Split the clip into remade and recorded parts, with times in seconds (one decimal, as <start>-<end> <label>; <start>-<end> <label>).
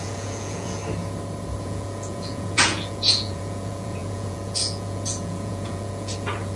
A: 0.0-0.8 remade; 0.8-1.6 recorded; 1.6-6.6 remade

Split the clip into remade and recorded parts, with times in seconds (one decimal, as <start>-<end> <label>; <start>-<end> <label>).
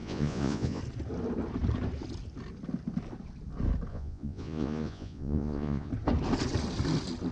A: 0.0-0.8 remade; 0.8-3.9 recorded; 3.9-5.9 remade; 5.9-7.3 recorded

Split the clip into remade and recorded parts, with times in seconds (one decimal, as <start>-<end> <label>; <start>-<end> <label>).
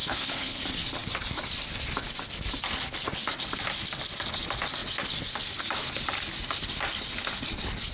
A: 0.0-0.6 remade; 0.6-7.9 recorded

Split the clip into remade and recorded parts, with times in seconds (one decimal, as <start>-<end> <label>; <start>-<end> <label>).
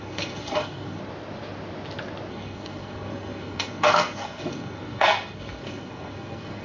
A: 0.0-1.0 remade; 1.0-2.3 recorded; 2.3-6.6 remade